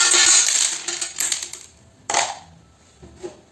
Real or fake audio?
real